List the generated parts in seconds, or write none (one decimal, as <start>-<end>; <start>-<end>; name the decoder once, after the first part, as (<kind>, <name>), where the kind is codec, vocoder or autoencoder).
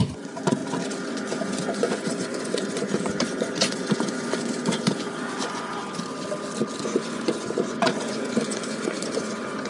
0.0-0.6 (vocoder, Vocos); 1.1-5.8; 6.8-9.7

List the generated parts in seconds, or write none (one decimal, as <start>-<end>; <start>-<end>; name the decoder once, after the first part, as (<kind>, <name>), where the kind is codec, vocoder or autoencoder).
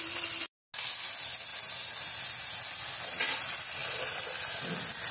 none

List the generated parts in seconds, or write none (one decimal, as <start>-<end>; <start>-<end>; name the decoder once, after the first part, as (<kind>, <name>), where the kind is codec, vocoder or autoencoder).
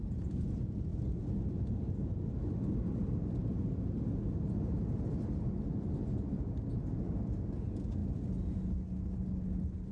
none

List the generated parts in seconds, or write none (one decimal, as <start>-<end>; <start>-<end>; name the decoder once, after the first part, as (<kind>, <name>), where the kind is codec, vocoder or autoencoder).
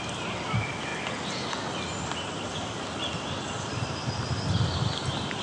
none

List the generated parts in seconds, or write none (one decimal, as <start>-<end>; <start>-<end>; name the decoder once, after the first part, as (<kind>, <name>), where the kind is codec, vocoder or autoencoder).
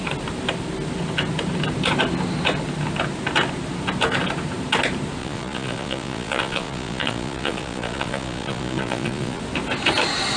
5.2-9.4 (vocoder, Vocos)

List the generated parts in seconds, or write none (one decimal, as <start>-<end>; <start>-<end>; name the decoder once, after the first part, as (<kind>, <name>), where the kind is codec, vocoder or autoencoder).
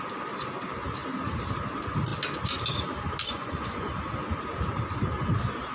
3.3-3.9 (vocoder, Vocos)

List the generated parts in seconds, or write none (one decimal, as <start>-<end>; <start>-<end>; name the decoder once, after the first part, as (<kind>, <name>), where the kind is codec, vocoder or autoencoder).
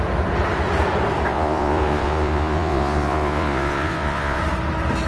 1.3-4.4 (vocoder, Vocos)